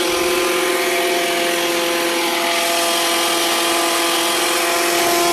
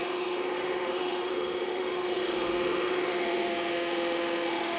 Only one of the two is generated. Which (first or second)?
second